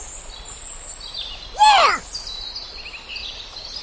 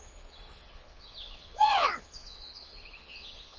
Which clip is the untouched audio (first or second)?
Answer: first